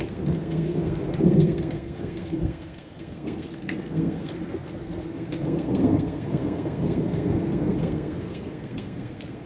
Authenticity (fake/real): fake